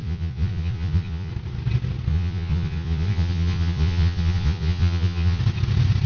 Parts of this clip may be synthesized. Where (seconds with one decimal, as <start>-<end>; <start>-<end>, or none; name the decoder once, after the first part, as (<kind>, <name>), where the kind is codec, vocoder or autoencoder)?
0.0-1.3 (vocoder, Vocos); 2.1-5.4